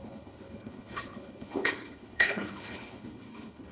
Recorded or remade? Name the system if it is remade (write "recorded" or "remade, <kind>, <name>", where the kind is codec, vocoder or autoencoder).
remade, codec, HILCodec